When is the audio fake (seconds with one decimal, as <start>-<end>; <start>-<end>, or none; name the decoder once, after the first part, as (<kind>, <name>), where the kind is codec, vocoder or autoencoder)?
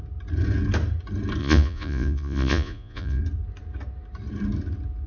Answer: 1.4-3.2 (vocoder, Vocos)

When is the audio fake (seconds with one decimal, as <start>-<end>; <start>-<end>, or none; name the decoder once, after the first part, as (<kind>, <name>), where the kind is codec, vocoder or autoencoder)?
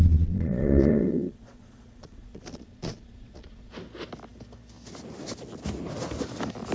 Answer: 0.0-3.7 (vocoder, Vocos)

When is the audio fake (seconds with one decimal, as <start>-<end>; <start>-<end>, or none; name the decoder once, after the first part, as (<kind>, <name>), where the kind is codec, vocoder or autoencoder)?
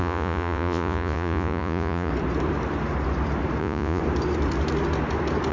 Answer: 0.0-2.1 (vocoder, Vocos); 3.6-4.0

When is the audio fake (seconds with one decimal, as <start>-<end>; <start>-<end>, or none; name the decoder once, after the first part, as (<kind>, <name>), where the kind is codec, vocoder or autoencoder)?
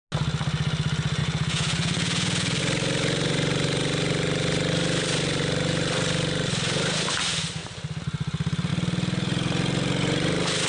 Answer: 1.2-2.6 (vocoder, Vocos)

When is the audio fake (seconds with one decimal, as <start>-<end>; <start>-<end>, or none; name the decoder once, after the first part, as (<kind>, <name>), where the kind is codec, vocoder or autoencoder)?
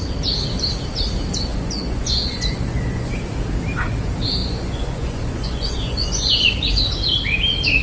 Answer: 1.5-3.1 (vocoder, Vocos); 4.4-6.5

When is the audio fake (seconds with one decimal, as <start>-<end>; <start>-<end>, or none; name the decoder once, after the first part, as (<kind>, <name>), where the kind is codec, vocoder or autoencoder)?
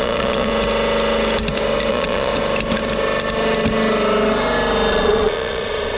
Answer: 0.0-0.5 (vocoder, Vocos); 1.9-2.3; 4.9-6.0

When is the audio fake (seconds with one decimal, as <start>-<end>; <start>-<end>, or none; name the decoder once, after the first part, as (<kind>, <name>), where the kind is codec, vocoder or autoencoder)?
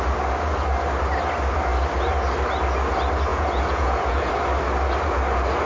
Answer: 3.3-4.3 (vocoder, Vocos)